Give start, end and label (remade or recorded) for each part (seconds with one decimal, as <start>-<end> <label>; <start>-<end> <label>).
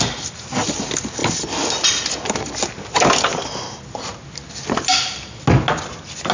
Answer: 0.0-6.3 recorded